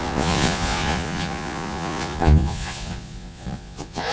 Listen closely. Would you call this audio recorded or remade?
remade